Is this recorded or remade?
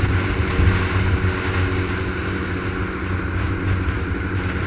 recorded